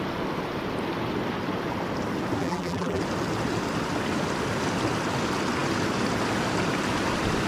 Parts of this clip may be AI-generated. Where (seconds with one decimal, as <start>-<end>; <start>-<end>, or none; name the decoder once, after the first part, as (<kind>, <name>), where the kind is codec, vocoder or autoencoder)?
2.4-3.0 (vocoder, BigVGAN v2)